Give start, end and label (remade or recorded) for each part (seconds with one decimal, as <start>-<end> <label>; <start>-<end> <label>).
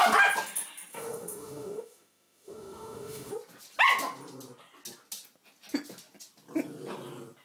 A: 0.0-0.9 recorded; 0.9-3.3 remade; 3.3-7.4 recorded